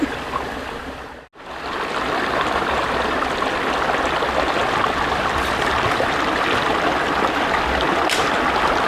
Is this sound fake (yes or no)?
no